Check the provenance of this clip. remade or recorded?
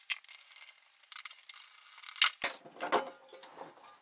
recorded